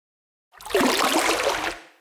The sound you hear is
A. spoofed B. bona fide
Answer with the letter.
B